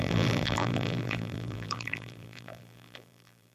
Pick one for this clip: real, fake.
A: fake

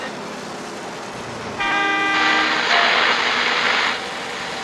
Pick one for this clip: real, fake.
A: real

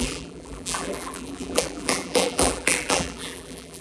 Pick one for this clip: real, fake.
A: fake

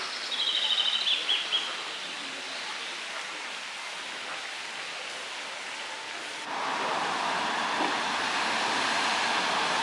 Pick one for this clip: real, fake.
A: real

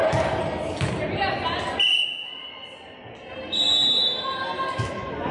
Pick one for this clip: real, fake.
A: real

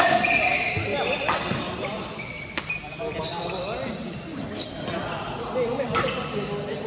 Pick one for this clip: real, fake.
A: real